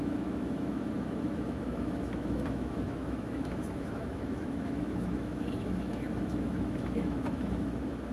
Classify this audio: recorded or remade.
remade